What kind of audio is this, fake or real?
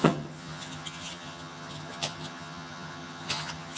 fake